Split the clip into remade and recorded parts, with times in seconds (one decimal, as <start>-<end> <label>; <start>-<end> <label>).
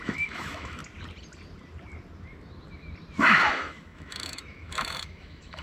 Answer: 0.0-0.8 remade; 0.8-3.2 recorded; 3.2-5.6 remade